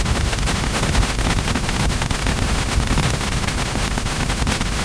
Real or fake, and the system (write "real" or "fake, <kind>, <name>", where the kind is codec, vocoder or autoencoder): fake, autoencoder, DAC-VAE